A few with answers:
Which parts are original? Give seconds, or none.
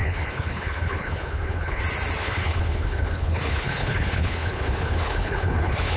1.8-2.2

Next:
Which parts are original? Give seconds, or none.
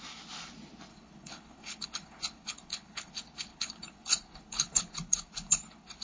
0.0-0.9; 3.1-3.5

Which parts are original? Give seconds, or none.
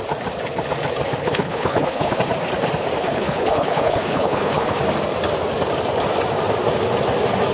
0.0-1.2; 2.2-3.0; 4.8-7.5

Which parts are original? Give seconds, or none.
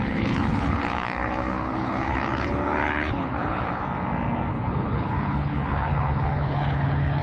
3.8-4.5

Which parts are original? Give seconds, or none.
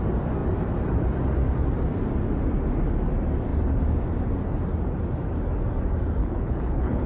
0.0-6.2